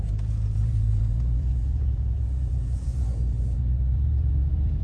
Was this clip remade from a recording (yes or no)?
yes